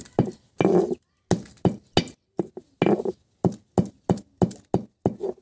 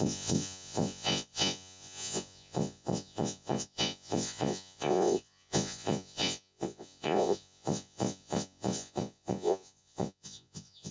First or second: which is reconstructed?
second